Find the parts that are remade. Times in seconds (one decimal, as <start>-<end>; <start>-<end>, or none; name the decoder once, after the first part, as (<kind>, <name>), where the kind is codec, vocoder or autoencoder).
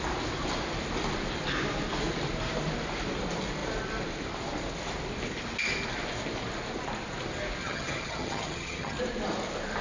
7.6-9.0 (vocoder, HiFi-GAN)